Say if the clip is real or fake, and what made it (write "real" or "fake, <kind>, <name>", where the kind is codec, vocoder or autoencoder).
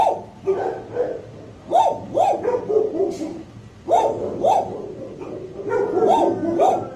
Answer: real